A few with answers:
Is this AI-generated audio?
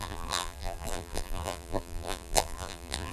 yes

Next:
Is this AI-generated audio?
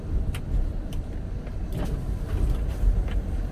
yes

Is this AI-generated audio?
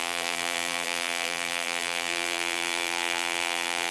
yes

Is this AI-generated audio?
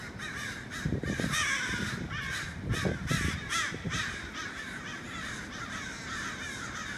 yes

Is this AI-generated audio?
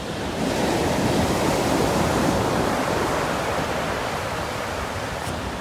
no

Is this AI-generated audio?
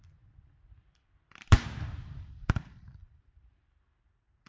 yes